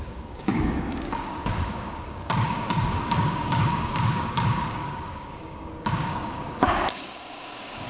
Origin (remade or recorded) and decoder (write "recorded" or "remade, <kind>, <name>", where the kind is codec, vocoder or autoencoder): remade, codec, DAC